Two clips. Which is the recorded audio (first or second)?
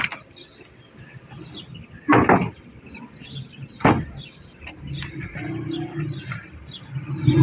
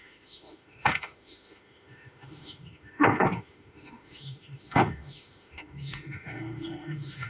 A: first